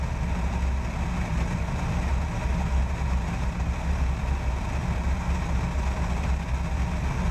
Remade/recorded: recorded